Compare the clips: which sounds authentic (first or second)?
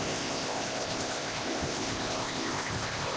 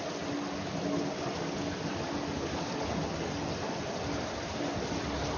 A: second